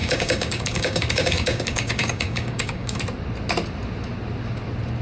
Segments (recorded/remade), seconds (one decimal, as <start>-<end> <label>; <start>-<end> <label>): 0.0-3.0 remade; 3.0-5.0 recorded